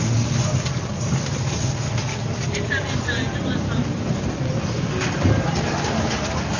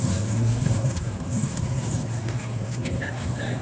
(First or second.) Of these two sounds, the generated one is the second